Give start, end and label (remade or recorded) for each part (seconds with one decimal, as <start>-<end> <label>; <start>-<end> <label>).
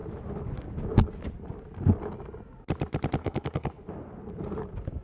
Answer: 0.0-3.2 recorded; 3.2-3.8 remade; 3.8-5.0 recorded